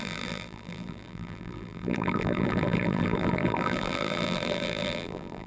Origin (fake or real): fake